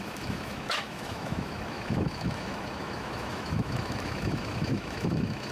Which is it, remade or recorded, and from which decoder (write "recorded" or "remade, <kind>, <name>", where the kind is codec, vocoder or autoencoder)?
remade, autoencoder, DAC-VAE